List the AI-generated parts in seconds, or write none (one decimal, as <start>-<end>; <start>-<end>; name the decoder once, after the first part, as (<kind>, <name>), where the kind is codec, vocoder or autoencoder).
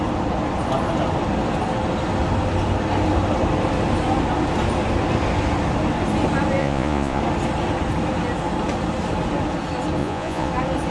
6.6-7.2 (vocoder, Vocos); 10.0-10.5